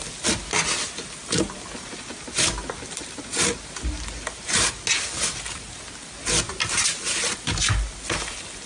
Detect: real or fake real